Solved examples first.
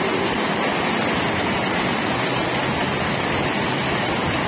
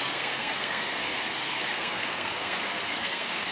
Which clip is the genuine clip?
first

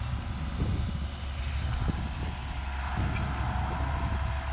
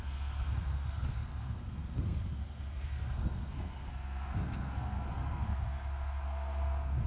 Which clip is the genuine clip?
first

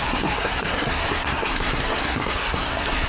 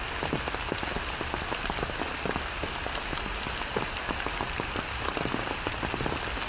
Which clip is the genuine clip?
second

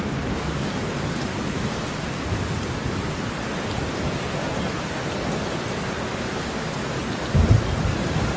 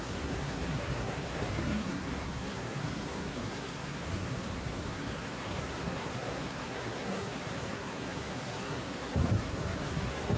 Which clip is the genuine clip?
first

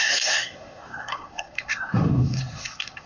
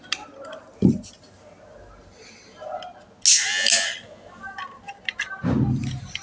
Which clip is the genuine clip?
second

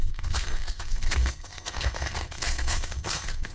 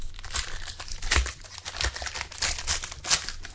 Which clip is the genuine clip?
second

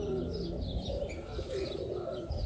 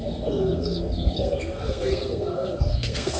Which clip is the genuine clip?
first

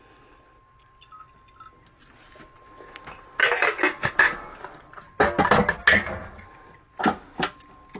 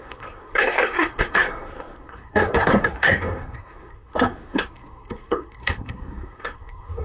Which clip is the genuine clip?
first